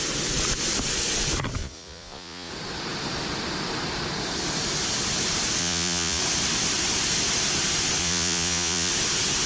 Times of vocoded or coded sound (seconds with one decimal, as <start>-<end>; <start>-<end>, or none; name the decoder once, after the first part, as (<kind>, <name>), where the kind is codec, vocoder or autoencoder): 1.6-2.5 (vocoder, Vocos); 5.6-6.2; 8.0-8.9